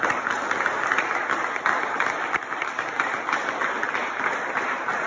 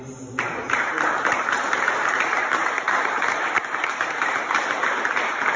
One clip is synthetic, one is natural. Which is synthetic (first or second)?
second